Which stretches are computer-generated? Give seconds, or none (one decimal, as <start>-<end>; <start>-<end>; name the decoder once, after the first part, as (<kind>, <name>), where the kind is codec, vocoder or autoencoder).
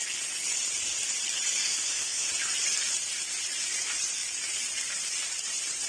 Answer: 1.7-2.3 (autoencoder, DAC-VAE)